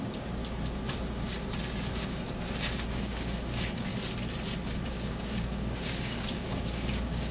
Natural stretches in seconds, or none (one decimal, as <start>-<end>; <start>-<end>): 0.4-2.9; 3.9-4.9